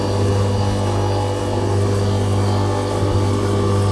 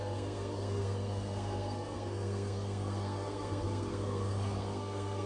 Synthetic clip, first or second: second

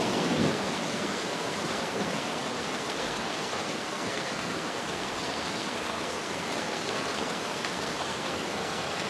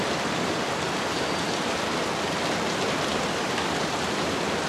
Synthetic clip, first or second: first